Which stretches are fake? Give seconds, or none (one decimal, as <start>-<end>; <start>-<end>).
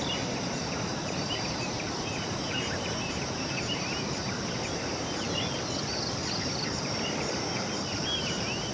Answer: 0.6-5.4; 6.2-8.7